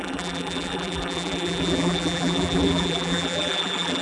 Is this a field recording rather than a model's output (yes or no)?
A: no